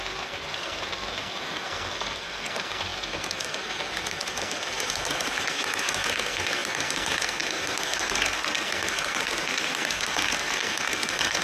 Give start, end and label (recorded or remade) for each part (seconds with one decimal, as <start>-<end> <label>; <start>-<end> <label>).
0.0-11.4 remade